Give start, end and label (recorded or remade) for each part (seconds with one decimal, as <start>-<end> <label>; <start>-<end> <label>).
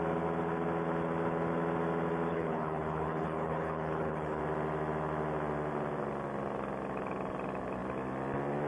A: 0.0-2.3 recorded; 2.3-4.4 remade; 4.4-8.7 recorded